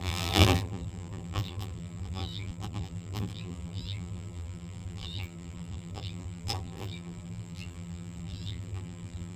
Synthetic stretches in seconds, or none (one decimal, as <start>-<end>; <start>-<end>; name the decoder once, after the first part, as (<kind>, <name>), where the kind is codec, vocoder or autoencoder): 0.0-9.4 (vocoder, BigVGAN v2)